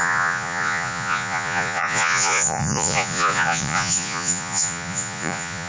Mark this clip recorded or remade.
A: remade